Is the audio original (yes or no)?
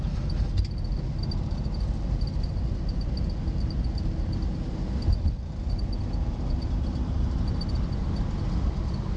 yes